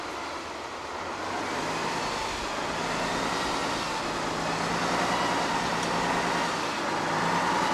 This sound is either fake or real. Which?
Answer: real